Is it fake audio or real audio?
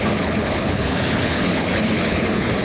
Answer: fake